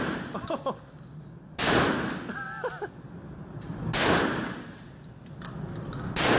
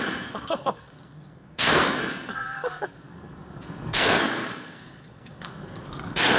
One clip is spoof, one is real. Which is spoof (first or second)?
second